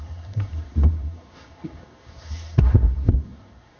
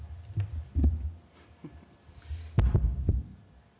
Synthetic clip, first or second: first